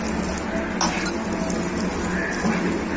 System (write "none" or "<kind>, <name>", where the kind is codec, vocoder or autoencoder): none